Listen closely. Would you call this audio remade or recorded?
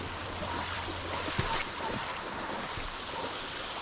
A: remade